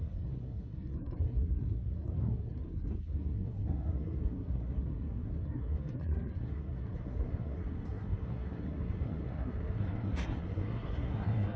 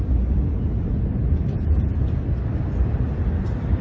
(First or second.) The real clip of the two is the second